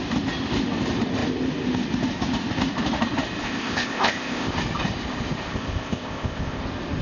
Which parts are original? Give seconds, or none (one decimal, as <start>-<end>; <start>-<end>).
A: 0.0-3.4; 4.5-5.5; 6.6-7.0